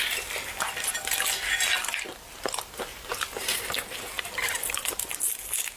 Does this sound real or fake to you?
real